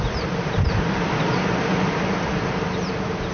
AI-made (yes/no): no